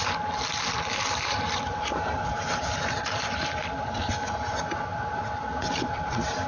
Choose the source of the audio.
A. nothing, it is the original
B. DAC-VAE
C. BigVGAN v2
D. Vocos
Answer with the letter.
A